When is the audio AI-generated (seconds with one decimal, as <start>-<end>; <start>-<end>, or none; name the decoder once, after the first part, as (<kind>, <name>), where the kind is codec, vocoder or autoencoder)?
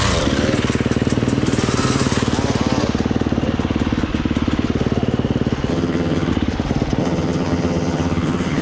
5.7-6.3 (vocoder, HiFi-GAN); 7.0-8.6